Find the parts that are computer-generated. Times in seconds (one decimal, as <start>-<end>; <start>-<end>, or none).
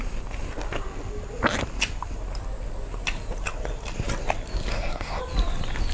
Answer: 4.7-5.2